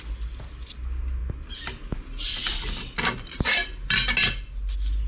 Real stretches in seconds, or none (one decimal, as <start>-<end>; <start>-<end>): 0.0-5.1